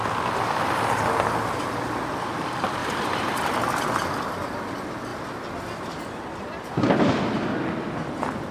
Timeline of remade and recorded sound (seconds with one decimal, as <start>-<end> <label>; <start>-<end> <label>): 0.0-2.8 recorded; 2.8-3.4 remade; 3.4-8.5 recorded